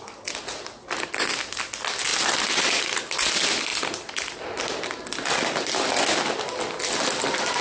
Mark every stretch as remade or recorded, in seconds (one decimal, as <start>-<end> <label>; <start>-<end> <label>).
0.0-2.1 recorded; 2.1-3.0 remade; 3.0-7.6 recorded